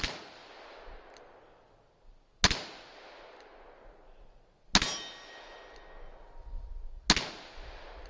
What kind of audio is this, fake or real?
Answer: real